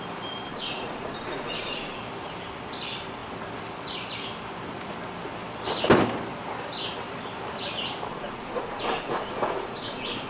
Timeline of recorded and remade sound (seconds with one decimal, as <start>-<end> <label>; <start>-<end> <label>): 0.0-0.5 recorded; 0.5-2.0 remade; 2.0-8.1 recorded; 8.1-10.3 remade